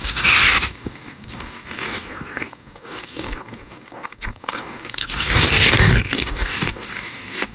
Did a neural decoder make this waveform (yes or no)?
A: yes